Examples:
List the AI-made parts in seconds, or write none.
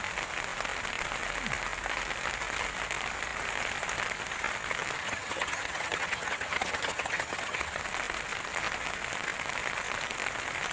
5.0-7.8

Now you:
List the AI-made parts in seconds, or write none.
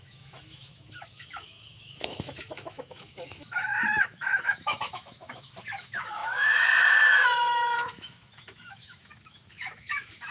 0.0-10.3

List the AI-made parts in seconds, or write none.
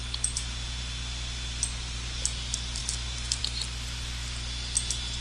none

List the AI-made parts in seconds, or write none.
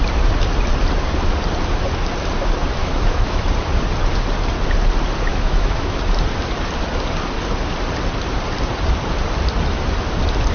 2.8-3.4; 5.3-6.0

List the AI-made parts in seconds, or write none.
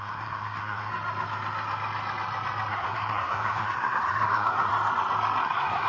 0.0-0.9; 2.7-4.7; 5.4-5.9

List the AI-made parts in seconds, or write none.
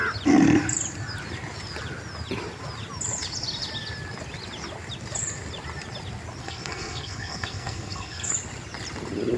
6.4-8.3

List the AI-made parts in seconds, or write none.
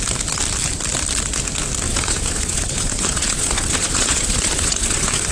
1.9-5.3